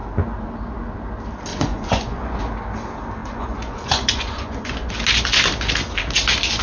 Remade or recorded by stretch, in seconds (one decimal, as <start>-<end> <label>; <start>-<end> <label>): 0.0-1.5 recorded; 1.5-2.4 remade; 2.4-3.2 recorded; 3.2-4.9 remade; 4.9-6.6 recorded